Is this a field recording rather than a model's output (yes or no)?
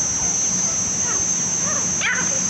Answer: yes